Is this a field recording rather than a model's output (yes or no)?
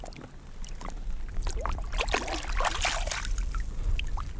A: yes